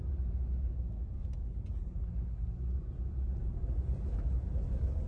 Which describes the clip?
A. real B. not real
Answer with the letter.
A